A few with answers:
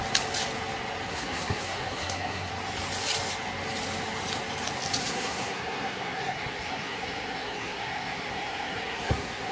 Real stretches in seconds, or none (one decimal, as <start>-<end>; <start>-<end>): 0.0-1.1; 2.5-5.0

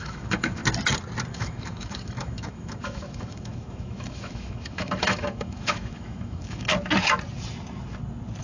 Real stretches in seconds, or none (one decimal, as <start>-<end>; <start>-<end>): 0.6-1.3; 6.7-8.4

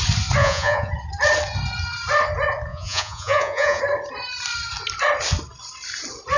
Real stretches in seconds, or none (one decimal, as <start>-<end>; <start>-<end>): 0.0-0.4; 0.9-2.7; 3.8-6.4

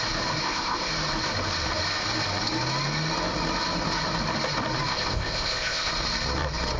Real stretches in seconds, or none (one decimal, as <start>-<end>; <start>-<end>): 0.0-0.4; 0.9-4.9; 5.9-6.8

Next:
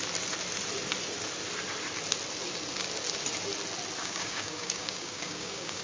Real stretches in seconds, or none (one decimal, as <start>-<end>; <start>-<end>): 0.0-4.0

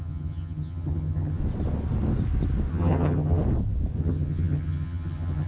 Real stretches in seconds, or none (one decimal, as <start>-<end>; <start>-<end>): 1.4-2.7; 3.4-4.0

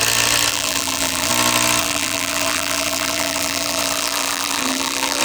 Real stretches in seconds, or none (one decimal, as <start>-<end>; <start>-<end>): 0.0-0.5; 1.3-1.8